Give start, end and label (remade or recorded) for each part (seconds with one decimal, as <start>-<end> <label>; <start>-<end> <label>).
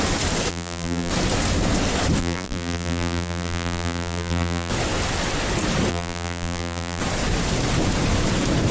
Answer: 0.0-0.5 recorded; 0.5-1.1 remade; 1.1-2.2 recorded; 2.2-4.7 remade; 4.7-5.9 recorded; 5.9-7.0 remade; 7.0-8.7 recorded